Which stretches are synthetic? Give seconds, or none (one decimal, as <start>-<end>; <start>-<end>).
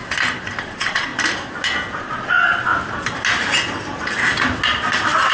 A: 0.6-1.1; 2.0-2.7